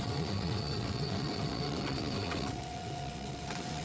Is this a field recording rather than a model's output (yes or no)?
no